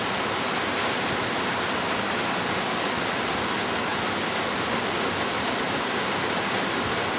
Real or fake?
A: real